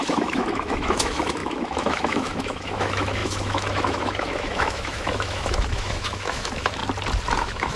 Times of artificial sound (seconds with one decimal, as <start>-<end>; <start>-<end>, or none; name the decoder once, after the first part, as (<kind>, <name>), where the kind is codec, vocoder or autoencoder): 0.0-6.8 (autoencoder, DAC-VAE); 7.3-7.8

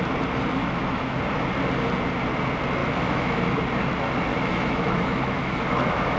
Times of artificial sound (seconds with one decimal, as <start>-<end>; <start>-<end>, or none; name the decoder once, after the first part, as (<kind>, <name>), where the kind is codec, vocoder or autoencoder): 0.6-1.2 (autoencoder, DAC-VAE); 2.8-3.4; 4.3-6.2